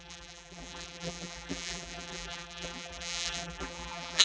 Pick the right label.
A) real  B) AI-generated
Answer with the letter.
B